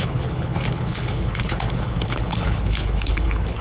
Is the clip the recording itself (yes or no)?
no